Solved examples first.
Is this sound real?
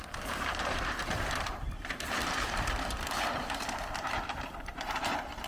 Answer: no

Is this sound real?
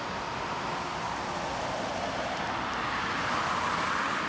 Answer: yes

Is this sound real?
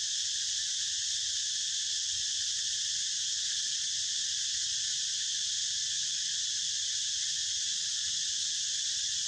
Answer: yes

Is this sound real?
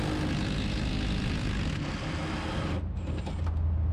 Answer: yes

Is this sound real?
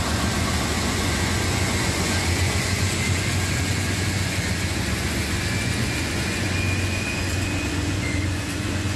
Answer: no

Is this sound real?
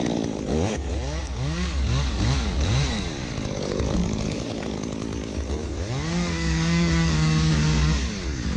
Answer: no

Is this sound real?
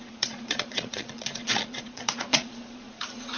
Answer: no